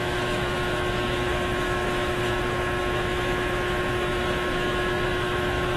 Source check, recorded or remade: remade